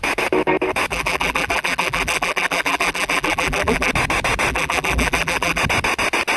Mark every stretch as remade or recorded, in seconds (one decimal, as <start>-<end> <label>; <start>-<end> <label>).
0.0-0.9 recorded; 0.9-3.9 remade; 3.9-4.5 recorded; 4.5-5.6 remade; 5.6-6.4 recorded